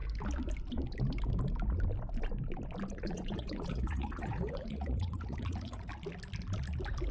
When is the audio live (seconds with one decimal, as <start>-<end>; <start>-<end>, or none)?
0.0-2.9; 5.9-7.1